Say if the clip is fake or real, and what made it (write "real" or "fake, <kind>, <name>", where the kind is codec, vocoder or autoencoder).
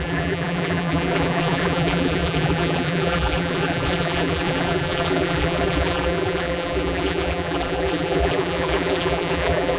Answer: fake, vocoder, BigVGAN v2